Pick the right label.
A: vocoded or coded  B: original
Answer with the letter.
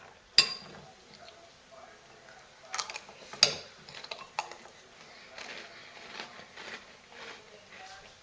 B